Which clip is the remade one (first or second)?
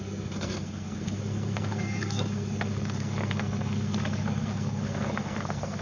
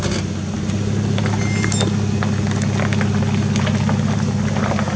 first